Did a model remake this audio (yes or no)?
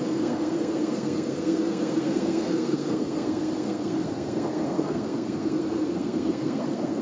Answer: yes